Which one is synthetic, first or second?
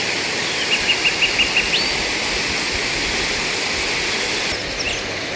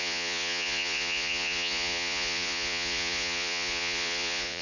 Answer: second